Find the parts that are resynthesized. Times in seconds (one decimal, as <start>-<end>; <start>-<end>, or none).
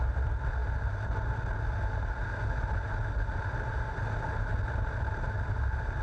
none